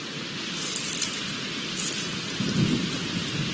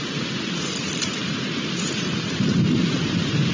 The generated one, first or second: second